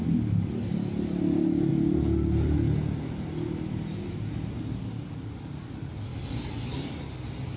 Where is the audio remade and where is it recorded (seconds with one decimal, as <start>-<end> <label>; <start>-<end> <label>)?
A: 0.0-7.6 recorded